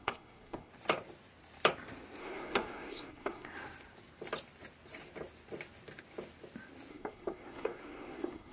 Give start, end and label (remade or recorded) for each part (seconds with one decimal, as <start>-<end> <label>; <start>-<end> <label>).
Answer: 0.0-0.7 remade; 0.7-2.2 recorded; 2.2-3.5 remade; 3.5-6.9 recorded; 6.9-8.5 remade